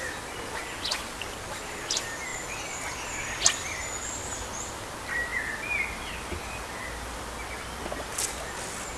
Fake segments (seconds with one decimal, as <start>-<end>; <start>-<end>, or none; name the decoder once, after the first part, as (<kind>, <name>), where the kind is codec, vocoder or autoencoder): none